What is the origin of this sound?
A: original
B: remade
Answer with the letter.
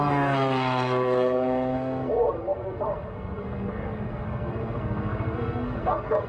B